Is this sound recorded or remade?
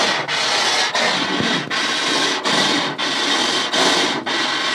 recorded